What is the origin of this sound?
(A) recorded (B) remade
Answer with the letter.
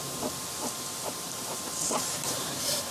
B